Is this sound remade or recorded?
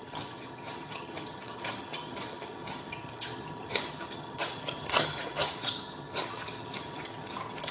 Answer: remade